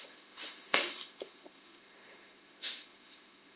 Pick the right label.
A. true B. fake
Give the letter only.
B